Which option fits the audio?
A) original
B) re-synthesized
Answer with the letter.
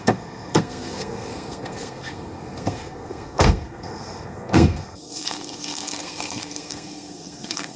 B